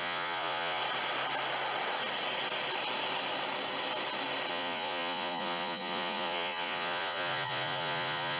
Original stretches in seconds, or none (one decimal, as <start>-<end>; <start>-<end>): 0.8-4.5